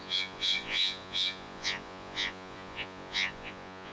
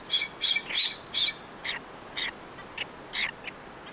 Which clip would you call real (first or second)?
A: second